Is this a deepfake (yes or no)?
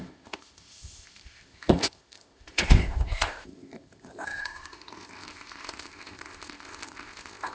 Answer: yes